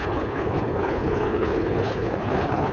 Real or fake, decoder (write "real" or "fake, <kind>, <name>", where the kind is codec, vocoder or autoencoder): fake, codec, HILCodec